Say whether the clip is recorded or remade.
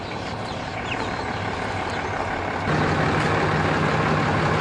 recorded